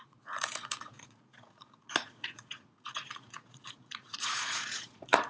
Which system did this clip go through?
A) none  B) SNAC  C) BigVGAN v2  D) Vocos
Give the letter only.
D